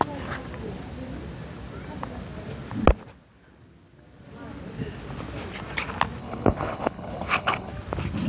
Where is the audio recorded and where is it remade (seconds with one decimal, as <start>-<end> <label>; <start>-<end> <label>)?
0.0-6.2 recorded; 6.2-7.7 remade; 7.7-8.3 recorded